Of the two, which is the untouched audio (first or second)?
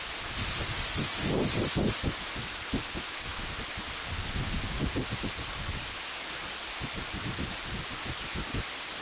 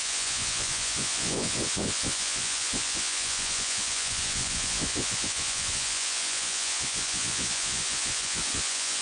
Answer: first